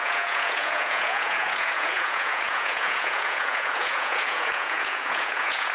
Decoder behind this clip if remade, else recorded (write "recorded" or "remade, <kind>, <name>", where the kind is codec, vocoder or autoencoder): remade, vocoder, Vocos